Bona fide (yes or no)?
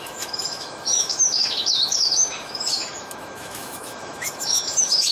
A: no